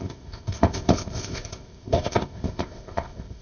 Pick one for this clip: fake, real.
fake